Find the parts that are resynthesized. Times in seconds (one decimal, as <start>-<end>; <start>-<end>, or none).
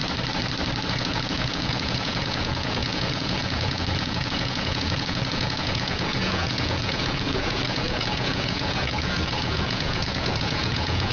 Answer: 0.9-11.1